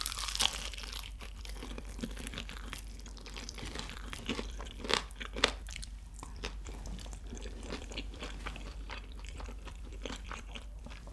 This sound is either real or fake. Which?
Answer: fake